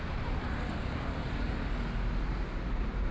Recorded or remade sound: recorded